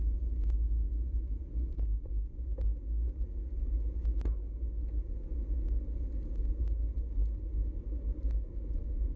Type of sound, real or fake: real